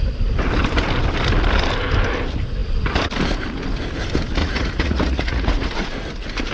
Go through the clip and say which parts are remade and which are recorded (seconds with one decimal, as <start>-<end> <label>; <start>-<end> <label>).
0.0-4.4 recorded; 4.4-6.1 remade; 6.1-6.5 recorded